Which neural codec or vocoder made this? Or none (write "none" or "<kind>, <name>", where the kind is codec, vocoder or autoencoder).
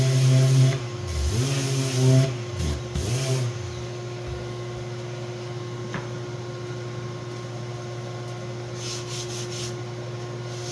none